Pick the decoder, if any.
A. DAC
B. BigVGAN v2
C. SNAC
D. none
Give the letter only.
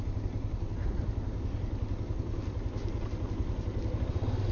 D